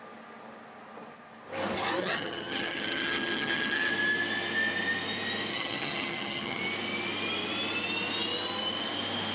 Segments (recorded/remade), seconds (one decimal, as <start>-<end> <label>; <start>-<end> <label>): 0.0-2.0 recorded; 2.0-3.9 remade; 3.9-5.5 recorded; 5.5-6.6 remade; 6.6-9.3 recorded